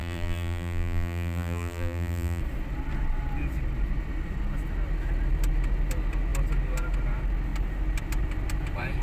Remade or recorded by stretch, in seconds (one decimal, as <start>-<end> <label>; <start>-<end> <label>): 0.0-2.4 remade; 2.4-9.0 recorded